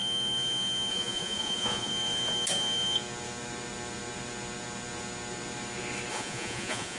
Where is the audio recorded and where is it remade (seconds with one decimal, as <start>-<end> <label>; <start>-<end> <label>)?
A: 0.0-0.9 recorded; 0.9-1.9 remade; 1.9-6.1 recorded; 6.1-7.0 remade